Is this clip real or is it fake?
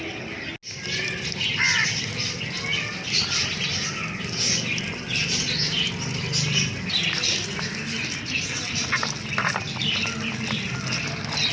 real